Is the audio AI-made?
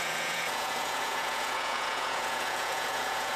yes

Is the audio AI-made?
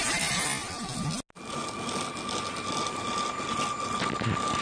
no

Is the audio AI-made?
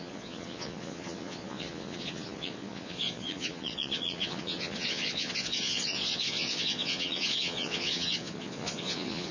yes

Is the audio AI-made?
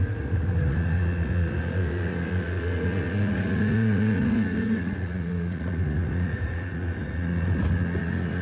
yes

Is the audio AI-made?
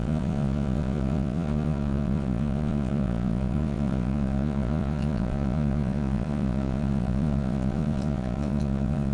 yes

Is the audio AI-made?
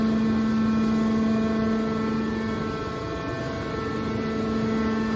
no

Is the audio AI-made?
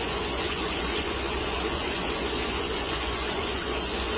yes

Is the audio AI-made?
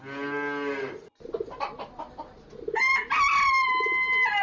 no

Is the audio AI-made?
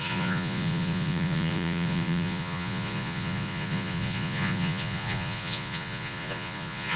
yes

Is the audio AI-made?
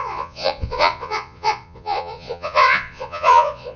yes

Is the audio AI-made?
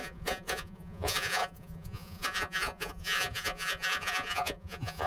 yes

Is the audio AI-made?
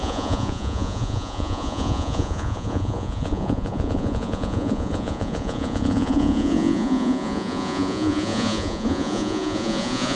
yes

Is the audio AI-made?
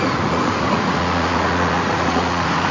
yes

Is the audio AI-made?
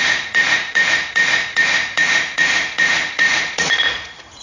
yes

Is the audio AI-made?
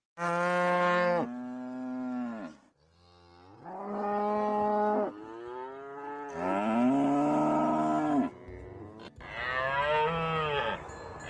no